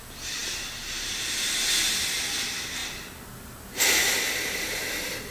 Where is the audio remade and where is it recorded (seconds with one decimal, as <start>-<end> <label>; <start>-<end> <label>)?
0.0-5.3 recorded